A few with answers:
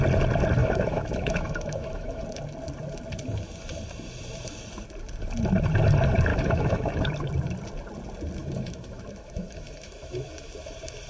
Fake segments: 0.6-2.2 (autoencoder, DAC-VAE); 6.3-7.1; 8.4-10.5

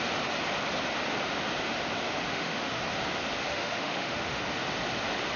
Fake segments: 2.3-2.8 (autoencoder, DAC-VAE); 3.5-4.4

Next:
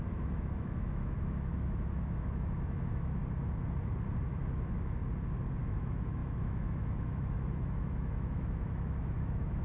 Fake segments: 0.0-3.2 (autoencoder, DAC-VAE); 4.3-5.0; 5.6-9.6

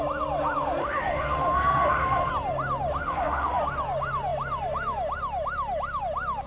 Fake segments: 0.8-2.3 (autoencoder, DAC-VAE); 3.0-3.6

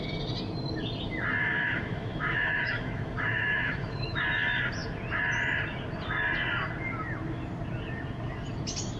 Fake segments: 1.4-4.2 (autoencoder, DAC-VAE)

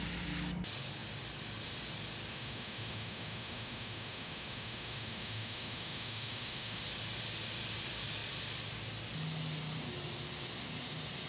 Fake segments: 2.3-6.8 (autoencoder, DAC-VAE)